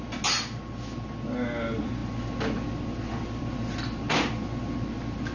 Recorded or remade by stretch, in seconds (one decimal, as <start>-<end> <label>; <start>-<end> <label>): 0.0-5.3 recorded